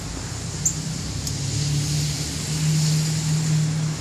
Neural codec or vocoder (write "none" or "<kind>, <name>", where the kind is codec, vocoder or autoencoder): none